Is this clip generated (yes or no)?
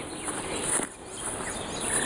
no